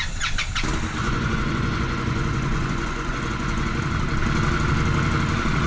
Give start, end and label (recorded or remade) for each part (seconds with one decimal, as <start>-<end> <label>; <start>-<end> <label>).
0.0-1.0 recorded; 1.0-3.8 remade; 3.8-5.7 recorded